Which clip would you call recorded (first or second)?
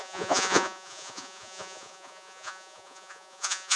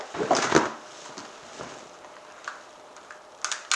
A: second